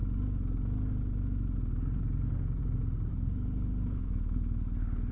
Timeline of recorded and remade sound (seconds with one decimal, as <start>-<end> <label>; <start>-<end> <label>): 0.0-3.1 recorded; 3.1-5.1 remade